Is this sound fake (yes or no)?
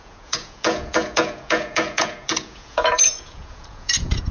yes